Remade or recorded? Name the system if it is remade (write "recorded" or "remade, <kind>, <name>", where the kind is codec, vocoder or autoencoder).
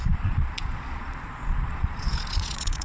remade, vocoder, Vocos